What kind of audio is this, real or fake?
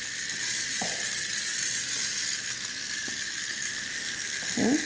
real